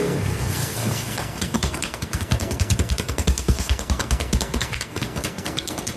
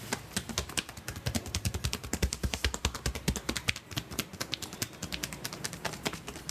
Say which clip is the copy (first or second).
first